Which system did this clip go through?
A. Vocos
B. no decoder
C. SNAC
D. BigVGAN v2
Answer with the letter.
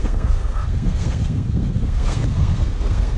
C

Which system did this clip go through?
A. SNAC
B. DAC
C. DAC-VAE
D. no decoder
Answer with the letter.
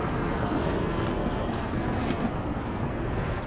A